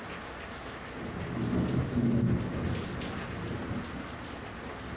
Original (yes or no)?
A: yes